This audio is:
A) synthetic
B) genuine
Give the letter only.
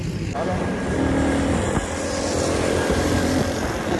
B